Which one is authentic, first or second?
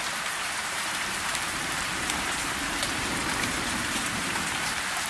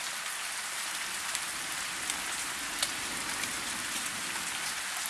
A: second